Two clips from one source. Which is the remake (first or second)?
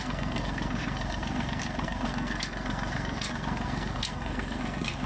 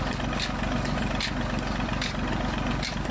first